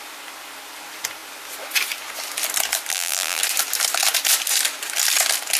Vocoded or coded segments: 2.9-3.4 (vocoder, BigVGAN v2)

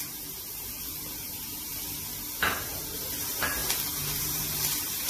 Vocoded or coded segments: 0.0-1.7 (vocoder, BigVGAN v2); 2.4-3.6; 4.2-5.1

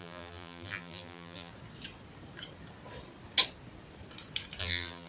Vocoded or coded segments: 0.0-1.5 (vocoder, BigVGAN v2); 4.6-5.1